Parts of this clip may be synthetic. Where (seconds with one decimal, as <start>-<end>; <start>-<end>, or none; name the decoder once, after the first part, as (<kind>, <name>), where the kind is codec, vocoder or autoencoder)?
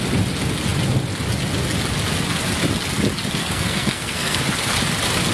3.4-4.4 (codec, SNAC)